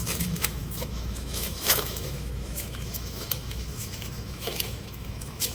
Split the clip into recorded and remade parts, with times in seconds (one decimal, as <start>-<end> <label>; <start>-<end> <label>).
0.0-5.5 remade